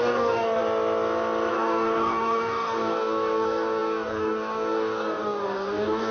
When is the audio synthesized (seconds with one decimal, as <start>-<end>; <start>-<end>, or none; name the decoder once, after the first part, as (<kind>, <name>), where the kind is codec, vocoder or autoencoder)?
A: 0.0-0.6 (codec, DAC); 1.5-6.1